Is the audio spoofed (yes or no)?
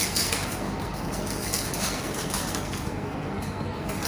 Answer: yes